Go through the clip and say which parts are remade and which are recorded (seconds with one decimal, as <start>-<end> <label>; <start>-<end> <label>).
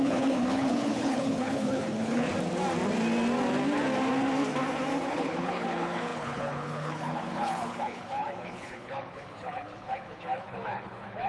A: 0.0-2.3 remade; 2.3-5.1 recorded; 5.1-11.3 remade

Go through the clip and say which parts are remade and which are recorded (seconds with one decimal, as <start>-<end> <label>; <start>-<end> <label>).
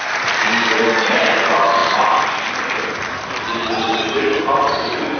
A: 0.0-0.8 remade; 0.8-5.2 recorded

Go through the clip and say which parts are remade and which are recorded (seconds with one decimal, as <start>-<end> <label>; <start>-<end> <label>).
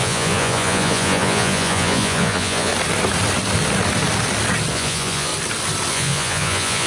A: 0.0-2.7 remade; 2.7-4.7 recorded; 4.7-5.3 remade; 5.3-5.9 recorded; 5.9-6.9 remade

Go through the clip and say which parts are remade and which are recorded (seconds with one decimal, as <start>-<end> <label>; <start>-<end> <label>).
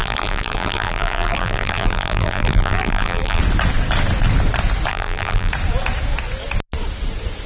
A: 0.0-3.4 remade; 3.4-4.9 recorded; 4.9-5.5 remade; 5.5-7.5 recorded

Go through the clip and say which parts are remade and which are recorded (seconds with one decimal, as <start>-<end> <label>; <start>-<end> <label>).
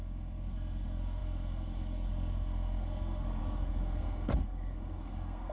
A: 0.0-5.5 remade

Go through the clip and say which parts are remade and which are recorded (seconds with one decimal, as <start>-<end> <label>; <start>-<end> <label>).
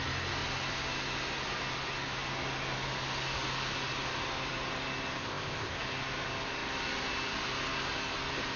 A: 0.0-5.2 recorded; 5.2-5.8 remade; 5.8-8.6 recorded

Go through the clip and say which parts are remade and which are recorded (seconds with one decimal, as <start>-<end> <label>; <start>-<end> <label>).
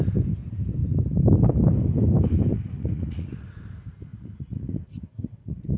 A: 0.0-2.5 recorded; 2.5-3.6 remade; 3.6-4.1 recorded; 4.1-5.8 remade